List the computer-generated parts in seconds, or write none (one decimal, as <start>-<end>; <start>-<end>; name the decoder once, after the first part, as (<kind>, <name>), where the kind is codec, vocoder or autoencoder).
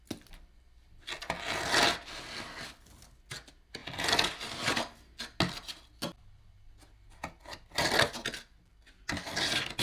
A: none